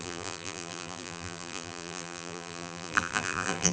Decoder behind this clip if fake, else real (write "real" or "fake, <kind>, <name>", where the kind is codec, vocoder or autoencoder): fake, vocoder, BigVGAN v2